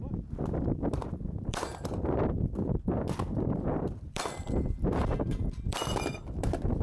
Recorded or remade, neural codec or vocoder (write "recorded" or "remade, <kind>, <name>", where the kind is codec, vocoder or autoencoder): remade, vocoder, BigVGAN v2